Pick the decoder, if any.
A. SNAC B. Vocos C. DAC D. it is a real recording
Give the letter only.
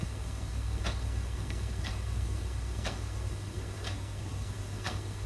A